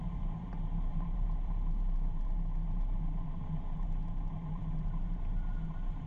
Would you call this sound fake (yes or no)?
yes